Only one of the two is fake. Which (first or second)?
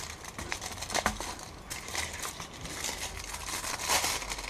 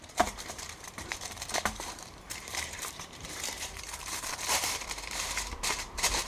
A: second